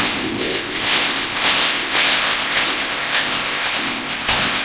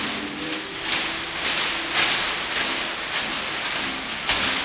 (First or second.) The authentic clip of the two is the second